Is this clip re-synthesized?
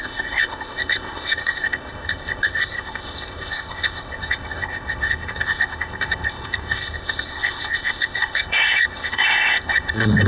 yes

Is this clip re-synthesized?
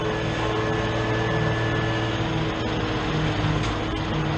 no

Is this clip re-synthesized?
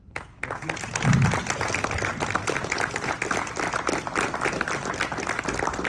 no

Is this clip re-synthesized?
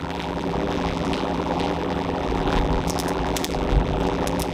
yes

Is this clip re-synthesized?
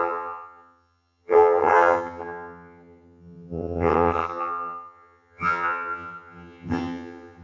yes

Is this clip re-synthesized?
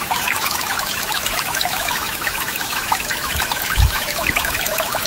yes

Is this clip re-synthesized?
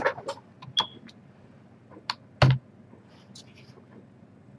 no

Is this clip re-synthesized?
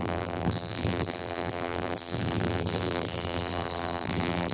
yes